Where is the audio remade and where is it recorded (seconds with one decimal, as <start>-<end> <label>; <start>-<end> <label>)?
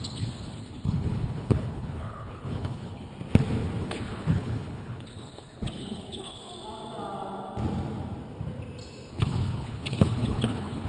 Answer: 0.0-3.1 remade; 3.1-3.8 recorded; 3.8-6.5 remade; 6.5-9.1 recorded; 9.1-10.9 remade